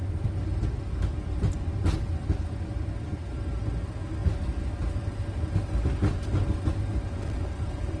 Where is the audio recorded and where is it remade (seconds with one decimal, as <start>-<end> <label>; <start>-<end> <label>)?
0.0-8.0 recorded